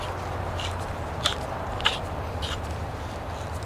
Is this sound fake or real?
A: real